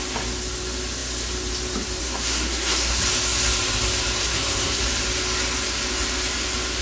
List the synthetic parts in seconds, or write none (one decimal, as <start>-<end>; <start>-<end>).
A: 2.0-3.0; 4.2-4.8